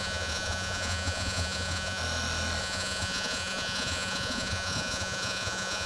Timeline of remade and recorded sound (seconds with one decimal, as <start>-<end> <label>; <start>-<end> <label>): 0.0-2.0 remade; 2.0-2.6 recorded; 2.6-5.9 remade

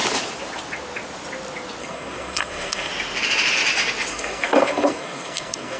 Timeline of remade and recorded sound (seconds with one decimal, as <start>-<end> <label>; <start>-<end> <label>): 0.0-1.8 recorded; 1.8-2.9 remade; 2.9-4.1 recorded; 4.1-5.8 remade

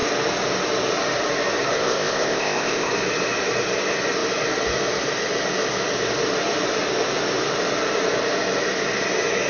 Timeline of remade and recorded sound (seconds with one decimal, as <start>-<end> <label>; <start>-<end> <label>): 0.0-1.7 recorded; 1.7-2.9 remade; 2.9-9.5 recorded